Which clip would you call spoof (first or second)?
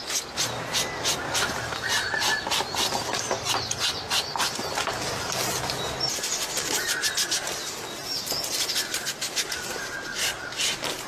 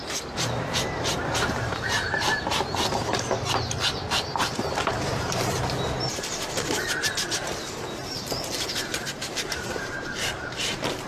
second